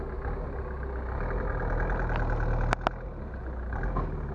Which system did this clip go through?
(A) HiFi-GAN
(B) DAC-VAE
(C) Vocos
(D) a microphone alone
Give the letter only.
D